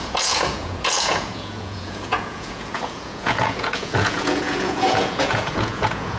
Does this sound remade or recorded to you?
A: remade